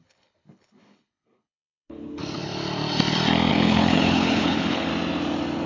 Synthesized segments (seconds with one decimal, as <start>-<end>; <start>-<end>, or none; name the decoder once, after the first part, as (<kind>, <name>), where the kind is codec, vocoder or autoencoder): 0.0-2.2 (codec, HILCodec); 3.5-4.9